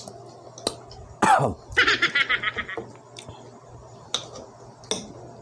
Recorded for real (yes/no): yes